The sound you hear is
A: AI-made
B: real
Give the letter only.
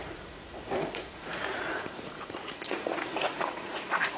A